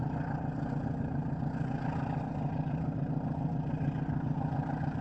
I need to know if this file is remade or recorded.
recorded